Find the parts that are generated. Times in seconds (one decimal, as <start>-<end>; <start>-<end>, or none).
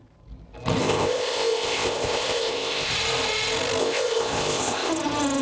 0.8-2.9; 3.8-4.9